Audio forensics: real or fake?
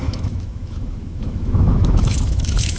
fake